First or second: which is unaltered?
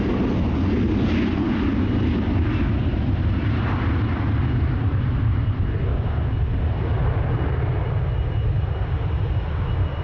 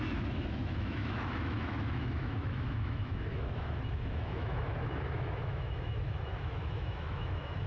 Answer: first